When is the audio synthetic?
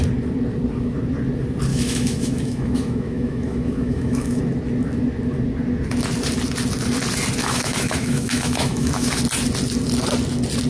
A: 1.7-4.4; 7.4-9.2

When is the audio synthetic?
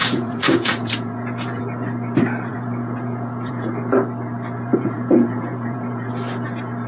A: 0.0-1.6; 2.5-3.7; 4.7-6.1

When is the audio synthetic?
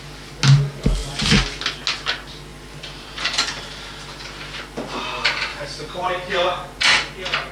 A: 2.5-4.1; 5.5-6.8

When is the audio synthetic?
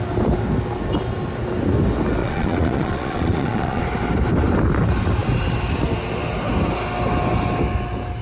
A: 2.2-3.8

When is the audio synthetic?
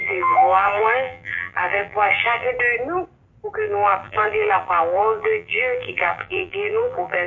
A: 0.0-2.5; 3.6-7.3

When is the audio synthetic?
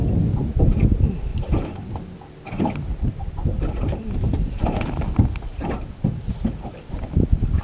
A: 0.6-1.3; 5.9-7.6